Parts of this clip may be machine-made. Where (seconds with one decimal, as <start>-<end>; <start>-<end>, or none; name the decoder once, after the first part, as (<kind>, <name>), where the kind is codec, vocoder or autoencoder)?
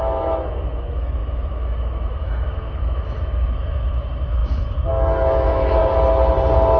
0.0-5.8 (autoencoder, DAC-VAE)